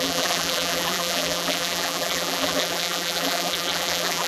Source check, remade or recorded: remade